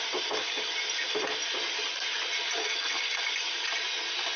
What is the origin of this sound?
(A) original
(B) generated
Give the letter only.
A